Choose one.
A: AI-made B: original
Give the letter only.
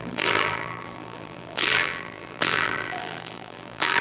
A